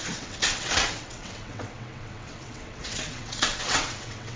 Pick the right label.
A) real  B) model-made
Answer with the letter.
B